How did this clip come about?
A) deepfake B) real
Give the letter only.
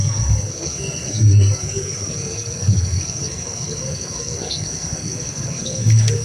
A